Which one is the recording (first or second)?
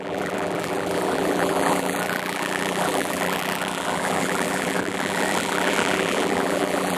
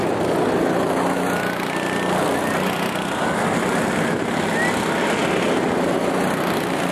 second